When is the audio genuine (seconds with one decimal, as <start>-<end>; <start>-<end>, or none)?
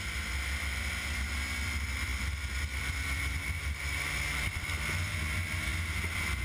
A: 0.0-6.4